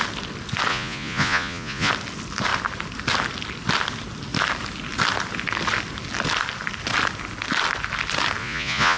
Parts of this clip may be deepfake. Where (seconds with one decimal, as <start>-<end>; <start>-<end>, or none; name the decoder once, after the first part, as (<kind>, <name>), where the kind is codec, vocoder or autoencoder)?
0.7-1.9 (vocoder, Vocos); 8.4-9.0